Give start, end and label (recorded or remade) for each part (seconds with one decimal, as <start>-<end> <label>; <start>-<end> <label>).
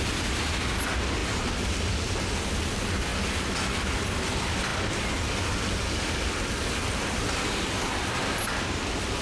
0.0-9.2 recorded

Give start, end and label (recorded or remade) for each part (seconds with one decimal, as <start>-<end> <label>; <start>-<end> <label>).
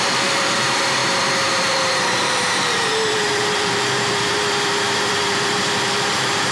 0.0-1.0 remade; 1.0-1.5 recorded; 1.5-6.5 remade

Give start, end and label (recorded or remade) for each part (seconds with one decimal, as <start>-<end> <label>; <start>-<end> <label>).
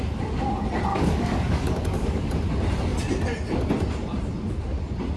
0.0-0.9 recorded; 0.9-2.3 remade; 2.3-5.2 recorded